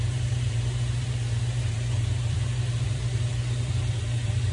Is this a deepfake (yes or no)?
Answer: yes